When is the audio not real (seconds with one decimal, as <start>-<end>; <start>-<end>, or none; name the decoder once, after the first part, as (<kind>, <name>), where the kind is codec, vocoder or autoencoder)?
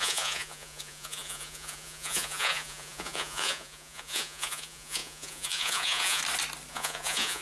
0.0-6.2 (vocoder, Vocos); 6.7-7.4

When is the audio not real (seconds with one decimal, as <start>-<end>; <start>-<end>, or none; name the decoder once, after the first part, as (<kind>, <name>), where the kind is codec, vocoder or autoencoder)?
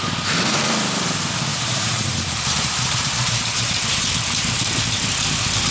1.5-4.8 (vocoder, BigVGAN v2)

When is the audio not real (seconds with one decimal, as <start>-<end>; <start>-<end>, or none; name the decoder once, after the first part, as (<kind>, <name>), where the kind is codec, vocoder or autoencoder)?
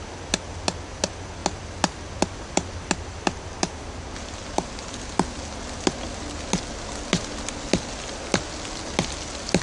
none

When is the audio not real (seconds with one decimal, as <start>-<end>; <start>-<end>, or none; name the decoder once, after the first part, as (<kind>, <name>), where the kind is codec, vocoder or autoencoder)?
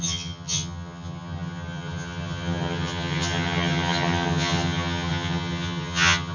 0.0-6.3 (vocoder, HiFi-GAN)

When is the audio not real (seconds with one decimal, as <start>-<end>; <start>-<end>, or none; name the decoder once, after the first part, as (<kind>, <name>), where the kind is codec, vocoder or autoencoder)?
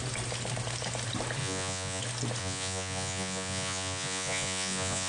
1.4-2.0 (vocoder, Vocos); 2.4-5.1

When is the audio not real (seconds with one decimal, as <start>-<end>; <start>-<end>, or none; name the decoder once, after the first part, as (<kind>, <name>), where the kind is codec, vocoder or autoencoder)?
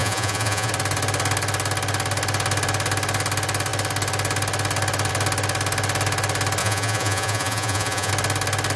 0.0-0.7 (vocoder, Vocos); 6.6-8.1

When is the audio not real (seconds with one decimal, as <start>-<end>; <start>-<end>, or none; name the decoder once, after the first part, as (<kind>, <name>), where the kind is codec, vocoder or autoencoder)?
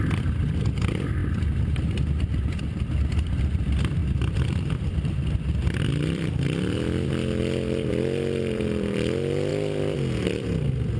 0.0-9.5 (vocoder, BigVGAN v2)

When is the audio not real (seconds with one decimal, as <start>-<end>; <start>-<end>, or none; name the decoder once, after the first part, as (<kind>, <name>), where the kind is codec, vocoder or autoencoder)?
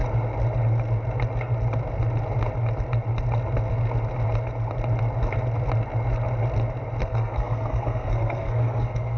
7.0-9.2 (codec, SNAC)